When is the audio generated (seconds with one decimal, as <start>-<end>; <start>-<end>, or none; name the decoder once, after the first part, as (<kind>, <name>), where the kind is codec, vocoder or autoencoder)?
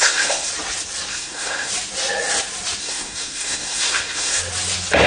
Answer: 0.0-0.5 (codec, SNAC); 1.1-1.7; 2.8-4.4